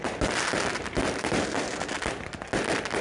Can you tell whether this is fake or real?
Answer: real